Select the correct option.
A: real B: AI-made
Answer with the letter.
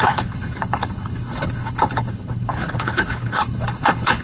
B